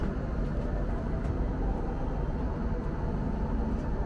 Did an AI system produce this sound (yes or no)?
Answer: no